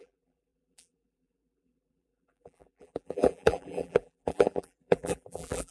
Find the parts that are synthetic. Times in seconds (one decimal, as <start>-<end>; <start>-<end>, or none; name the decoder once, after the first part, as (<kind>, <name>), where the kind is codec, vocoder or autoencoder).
0.0-5.7 (vocoder, BigVGAN v2)